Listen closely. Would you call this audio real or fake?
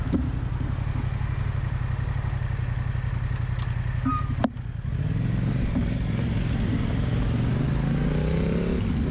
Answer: real